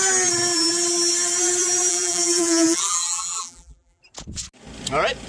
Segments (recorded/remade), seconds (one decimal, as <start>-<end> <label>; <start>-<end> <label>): 0.0-1.9 recorded; 1.9-4.0 remade; 4.0-5.3 recorded